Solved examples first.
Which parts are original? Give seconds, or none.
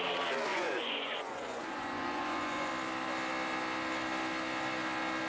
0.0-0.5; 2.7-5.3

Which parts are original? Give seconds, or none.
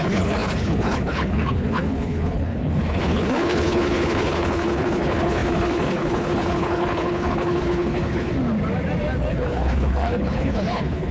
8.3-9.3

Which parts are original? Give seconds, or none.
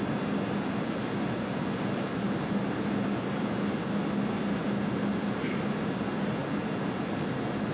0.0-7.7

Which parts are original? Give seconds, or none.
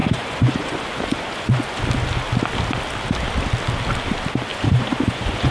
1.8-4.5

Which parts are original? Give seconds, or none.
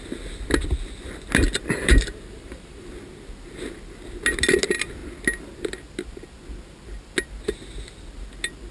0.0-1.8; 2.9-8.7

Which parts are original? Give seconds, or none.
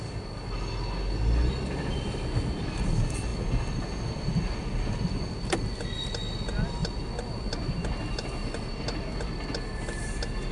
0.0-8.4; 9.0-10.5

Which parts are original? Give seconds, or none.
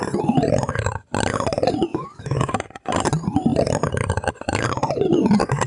0.0-1.9; 2.5-5.7